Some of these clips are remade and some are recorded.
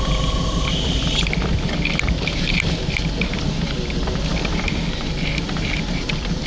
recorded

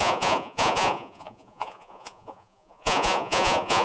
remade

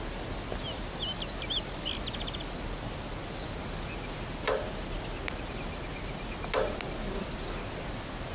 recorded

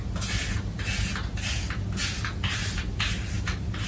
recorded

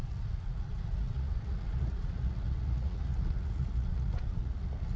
remade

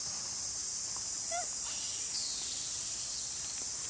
recorded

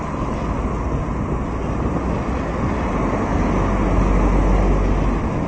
recorded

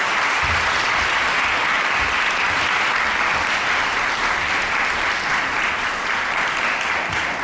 recorded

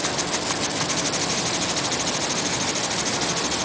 recorded